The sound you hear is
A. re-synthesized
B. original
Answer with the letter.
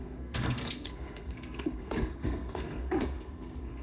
A